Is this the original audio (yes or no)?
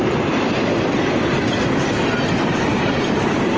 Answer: yes